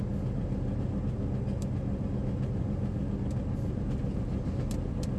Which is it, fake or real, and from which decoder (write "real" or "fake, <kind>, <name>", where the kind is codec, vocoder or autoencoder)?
real